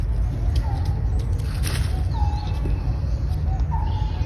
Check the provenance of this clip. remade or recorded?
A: recorded